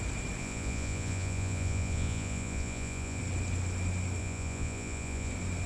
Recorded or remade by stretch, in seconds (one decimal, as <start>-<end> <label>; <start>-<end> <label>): 0.0-0.4 recorded; 0.4-3.2 remade; 3.2-4.2 recorded; 4.2-5.3 remade; 5.3-5.7 recorded